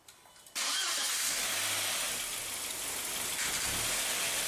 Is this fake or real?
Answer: real